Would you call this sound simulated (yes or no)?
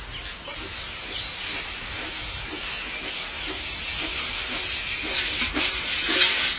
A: no